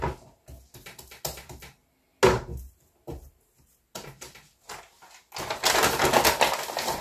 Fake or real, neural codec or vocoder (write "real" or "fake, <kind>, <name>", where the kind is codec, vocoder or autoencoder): real